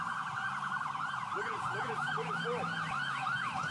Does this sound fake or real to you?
real